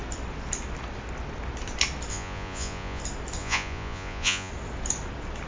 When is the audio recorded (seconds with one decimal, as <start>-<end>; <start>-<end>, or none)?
0.0-2.1; 3.0-3.4; 4.5-5.5